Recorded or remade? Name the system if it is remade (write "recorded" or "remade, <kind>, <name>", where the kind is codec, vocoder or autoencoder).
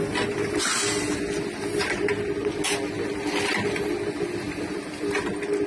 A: recorded